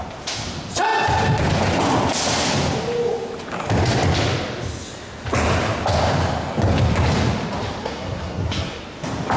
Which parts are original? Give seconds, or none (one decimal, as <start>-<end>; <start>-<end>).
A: 0.0-7.8; 8.8-9.4